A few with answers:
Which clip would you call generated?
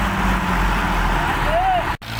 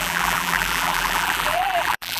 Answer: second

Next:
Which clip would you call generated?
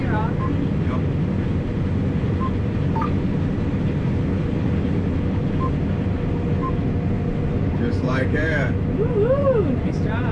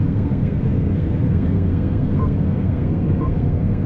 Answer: second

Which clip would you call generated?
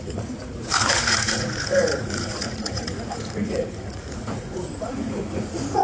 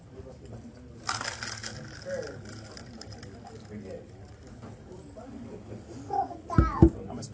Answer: first